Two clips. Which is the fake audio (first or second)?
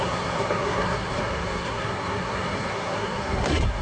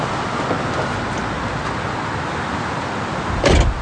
first